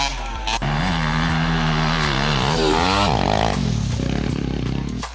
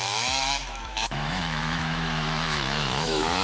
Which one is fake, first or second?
second